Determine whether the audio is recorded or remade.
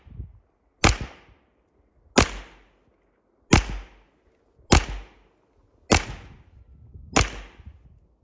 recorded